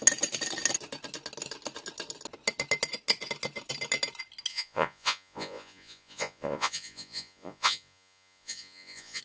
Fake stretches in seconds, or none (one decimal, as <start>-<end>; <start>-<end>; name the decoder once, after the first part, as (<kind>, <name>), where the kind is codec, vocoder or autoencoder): 4.5-9.2 (vocoder, Vocos)